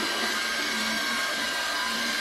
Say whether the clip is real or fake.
fake